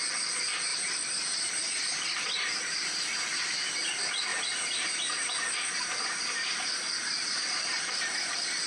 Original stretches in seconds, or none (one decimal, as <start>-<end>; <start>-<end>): 0.0-0.7; 2.2-4.3; 5.3-8.7